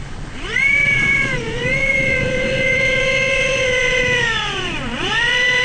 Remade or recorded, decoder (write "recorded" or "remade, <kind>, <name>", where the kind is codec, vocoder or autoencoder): remade, vocoder, Vocos